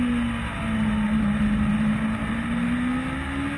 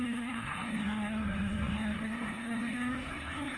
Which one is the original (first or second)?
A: first